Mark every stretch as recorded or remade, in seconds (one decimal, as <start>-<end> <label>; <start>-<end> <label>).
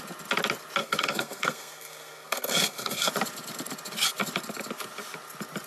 0.0-0.8 recorded; 0.8-3.1 remade; 3.1-5.7 recorded